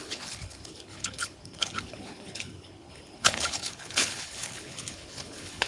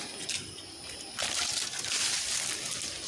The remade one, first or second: first